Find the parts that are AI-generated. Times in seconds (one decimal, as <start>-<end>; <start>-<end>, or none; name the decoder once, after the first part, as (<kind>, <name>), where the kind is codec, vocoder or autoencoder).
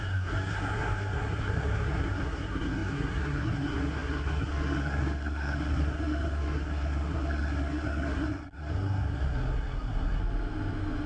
0.0-10.2 (codec, SNAC)